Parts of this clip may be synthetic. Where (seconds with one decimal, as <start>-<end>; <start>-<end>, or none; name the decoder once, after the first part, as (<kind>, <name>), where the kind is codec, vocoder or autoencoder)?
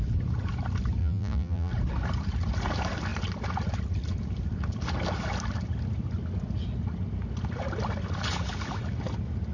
1.0-1.7 (vocoder, BigVGAN v2)